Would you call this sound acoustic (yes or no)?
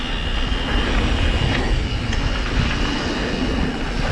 yes